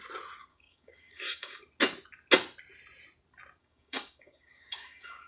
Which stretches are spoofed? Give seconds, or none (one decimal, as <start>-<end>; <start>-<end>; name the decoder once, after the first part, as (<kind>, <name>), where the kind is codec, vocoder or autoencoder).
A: 0.5-1.6 (codec, DAC); 3.6-5.3